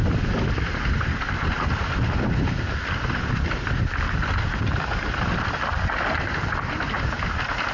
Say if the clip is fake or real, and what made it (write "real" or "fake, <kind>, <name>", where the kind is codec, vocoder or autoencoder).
real